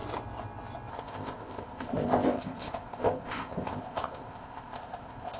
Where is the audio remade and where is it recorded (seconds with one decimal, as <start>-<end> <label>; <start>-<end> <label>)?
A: 0.0-0.9 recorded; 0.9-5.4 remade